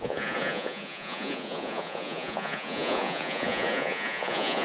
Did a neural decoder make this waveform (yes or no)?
yes